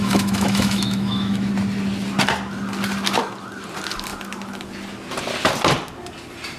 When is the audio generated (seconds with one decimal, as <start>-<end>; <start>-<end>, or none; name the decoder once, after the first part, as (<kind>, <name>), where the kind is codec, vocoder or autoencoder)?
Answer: 0.0-1.5 (autoencoder, DAC-VAE)